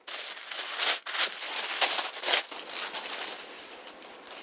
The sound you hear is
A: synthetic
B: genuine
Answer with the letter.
B